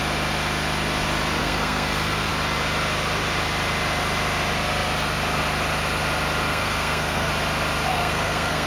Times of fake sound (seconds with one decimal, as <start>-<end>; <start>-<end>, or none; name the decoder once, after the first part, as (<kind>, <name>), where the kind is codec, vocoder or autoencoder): 1.4-2.3 (codec, SNAC); 6.5-7.3; 7.9-8.7